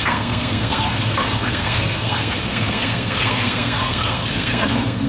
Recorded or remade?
remade